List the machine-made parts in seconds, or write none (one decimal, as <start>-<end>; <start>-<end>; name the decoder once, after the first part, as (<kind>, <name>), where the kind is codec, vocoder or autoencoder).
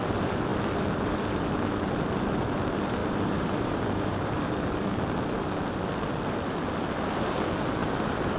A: 3.0-4.4 (vocoder, BigVGAN v2); 7.8-8.4